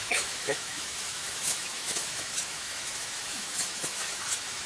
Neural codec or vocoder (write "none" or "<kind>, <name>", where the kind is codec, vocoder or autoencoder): autoencoder, DAC-VAE